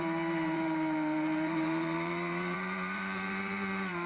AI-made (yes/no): yes